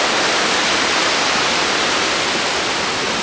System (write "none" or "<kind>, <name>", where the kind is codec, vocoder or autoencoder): none